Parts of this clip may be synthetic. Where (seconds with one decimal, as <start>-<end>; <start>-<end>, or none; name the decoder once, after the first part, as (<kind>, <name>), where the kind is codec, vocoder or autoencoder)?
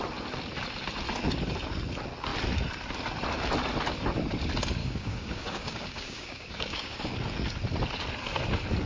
4.8-7.1 (codec, DAC)